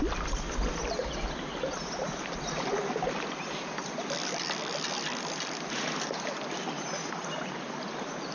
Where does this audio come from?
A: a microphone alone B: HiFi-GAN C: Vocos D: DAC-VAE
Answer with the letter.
A